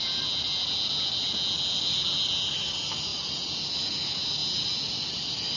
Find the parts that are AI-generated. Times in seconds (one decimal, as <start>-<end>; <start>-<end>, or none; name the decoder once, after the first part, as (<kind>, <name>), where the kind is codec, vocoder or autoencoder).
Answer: none